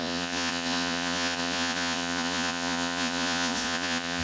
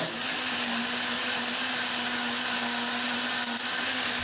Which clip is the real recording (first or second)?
second